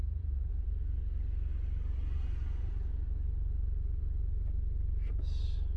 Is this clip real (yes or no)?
no